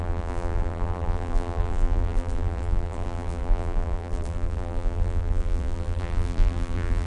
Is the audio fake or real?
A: fake